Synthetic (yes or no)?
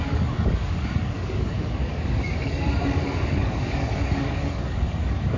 yes